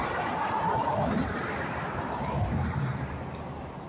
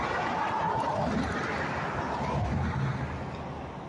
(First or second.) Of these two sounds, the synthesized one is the first